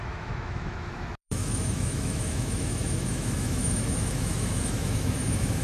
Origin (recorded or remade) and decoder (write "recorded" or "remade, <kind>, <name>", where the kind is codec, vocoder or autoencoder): remade, autoencoder, DAC-VAE